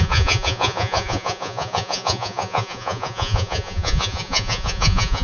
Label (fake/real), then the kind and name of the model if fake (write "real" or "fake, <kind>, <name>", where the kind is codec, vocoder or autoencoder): fake, vocoder, Vocos